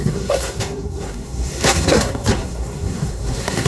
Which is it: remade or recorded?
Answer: remade